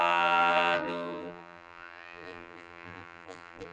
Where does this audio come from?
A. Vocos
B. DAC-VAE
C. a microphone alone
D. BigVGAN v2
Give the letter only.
D